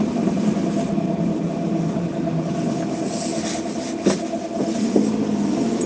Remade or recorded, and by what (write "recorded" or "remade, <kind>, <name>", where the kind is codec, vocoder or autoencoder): recorded